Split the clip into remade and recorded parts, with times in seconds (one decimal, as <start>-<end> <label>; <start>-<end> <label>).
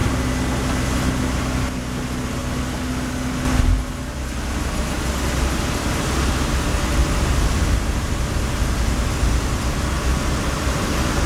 0.0-11.3 recorded